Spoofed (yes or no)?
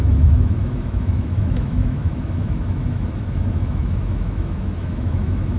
yes